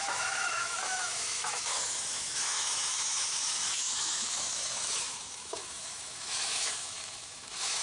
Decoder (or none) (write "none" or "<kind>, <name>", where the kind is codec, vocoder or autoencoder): autoencoder, DAC-VAE